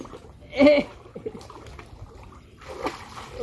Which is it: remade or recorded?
recorded